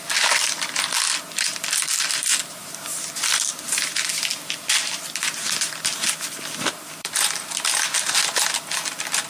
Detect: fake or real fake